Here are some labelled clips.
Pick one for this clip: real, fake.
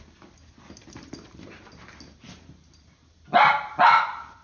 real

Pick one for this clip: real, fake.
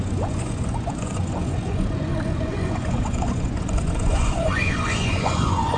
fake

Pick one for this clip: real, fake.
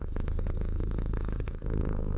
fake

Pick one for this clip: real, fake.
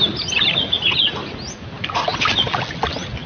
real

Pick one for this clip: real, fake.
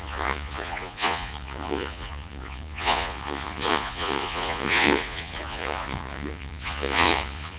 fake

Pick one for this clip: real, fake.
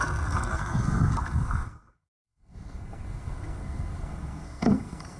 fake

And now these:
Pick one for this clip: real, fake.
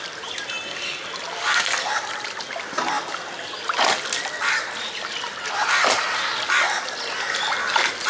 real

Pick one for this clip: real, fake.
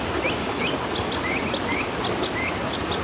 real